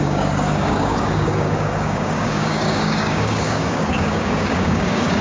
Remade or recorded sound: remade